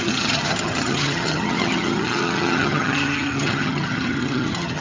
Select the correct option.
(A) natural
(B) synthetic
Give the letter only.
B